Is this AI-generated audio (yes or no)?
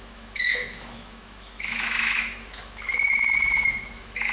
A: yes